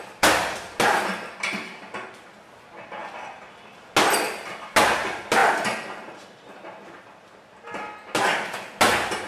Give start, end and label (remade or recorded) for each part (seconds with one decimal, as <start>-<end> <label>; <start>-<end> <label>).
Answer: 0.0-9.3 recorded